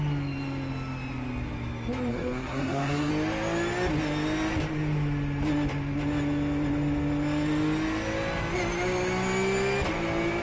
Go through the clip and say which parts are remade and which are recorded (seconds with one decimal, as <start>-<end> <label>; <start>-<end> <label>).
0.0-2.1 recorded; 2.1-3.1 remade; 3.1-10.4 recorded